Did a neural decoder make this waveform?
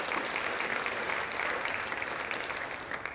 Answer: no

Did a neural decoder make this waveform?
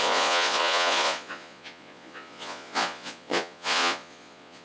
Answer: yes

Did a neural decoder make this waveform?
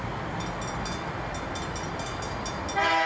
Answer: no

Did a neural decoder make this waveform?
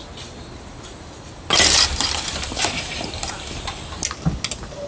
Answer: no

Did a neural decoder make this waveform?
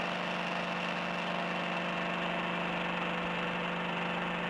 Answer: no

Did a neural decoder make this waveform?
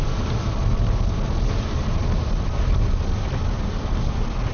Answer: no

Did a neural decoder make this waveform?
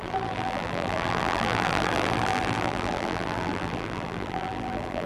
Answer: yes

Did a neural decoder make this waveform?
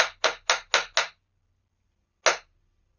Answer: no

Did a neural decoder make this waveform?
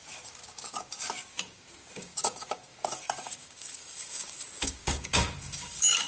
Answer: yes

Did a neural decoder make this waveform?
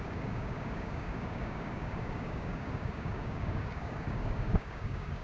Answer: yes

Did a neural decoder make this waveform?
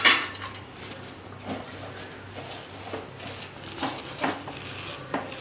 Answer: no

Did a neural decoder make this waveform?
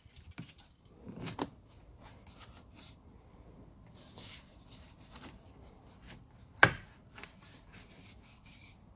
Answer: no